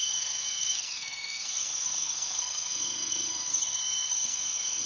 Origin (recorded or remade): remade